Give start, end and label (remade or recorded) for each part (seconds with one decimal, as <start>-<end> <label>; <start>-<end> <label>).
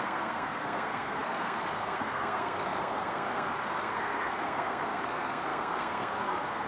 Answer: 0.0-6.7 remade